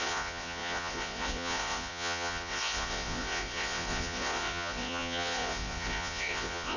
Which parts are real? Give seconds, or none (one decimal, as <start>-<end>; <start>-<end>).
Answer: none